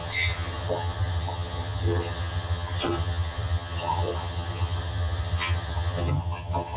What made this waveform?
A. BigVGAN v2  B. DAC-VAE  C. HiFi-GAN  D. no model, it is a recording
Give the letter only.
C